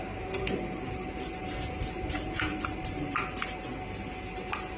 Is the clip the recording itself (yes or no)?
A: yes